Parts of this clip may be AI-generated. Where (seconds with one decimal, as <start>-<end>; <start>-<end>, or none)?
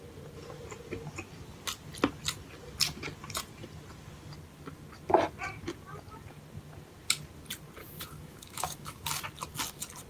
7.8-9.0